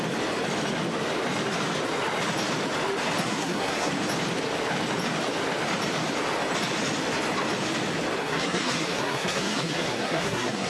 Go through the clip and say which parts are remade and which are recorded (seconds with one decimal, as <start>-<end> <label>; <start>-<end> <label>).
0.0-3.2 recorded; 3.2-3.9 remade; 3.9-8.2 recorded; 8.2-10.7 remade